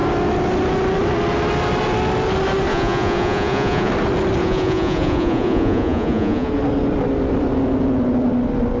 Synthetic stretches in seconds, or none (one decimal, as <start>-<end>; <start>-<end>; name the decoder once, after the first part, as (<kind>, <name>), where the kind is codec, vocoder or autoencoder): 2.7-3.9 (vocoder, Vocos); 4.4-6.5